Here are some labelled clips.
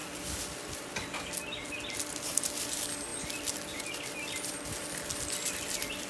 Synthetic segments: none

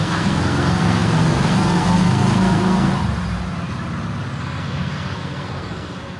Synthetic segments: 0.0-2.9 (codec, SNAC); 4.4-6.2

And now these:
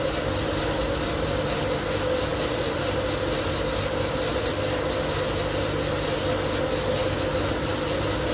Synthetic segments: none